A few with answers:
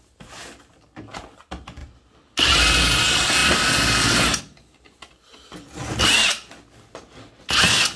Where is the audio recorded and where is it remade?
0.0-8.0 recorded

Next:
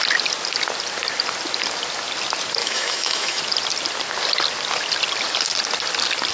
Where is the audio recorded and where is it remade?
0.0-2.6 recorded; 2.6-3.4 remade; 3.4-6.3 recorded

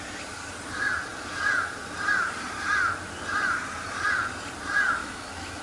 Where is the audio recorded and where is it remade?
0.0-5.0 recorded; 5.0-5.6 remade